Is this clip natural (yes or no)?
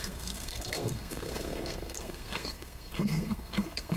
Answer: no